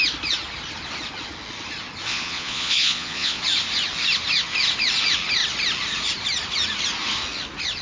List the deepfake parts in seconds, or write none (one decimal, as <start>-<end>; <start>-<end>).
2.1-3.4